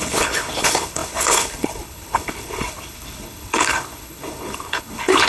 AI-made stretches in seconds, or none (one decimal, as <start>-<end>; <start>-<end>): 0.0-5.3